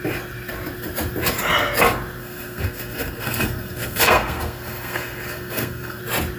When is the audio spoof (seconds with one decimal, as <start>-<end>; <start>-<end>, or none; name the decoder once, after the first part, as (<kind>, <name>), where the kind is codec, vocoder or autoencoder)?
2.2-6.0 (codec, SNAC)